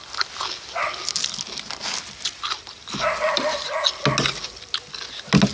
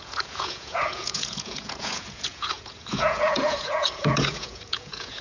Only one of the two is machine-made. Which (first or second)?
second